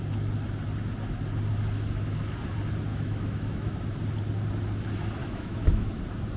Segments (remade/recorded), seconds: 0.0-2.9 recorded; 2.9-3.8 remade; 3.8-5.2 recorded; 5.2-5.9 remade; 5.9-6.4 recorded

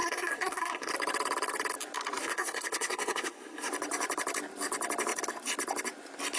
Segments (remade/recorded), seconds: 0.0-0.9 remade; 0.9-2.2 recorded; 2.2-3.7 remade; 3.7-6.4 recorded

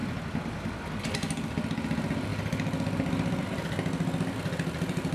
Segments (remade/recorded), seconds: 0.0-5.1 recorded